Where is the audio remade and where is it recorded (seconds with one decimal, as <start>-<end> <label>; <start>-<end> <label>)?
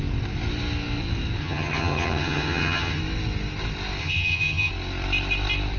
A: 0.0-1.4 recorded; 1.4-3.0 remade; 3.0-4.0 recorded; 4.0-4.7 remade; 4.7-5.8 recorded